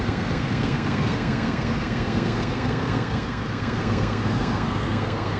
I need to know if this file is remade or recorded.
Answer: remade